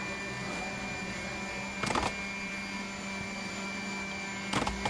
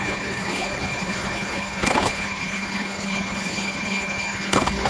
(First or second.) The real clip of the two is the first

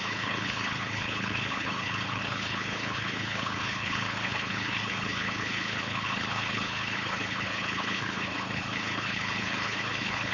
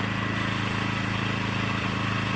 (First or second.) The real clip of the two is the second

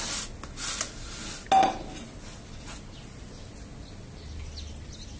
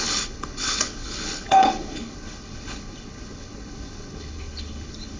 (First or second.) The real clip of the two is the first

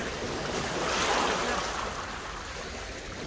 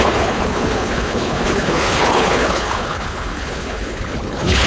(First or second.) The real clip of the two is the first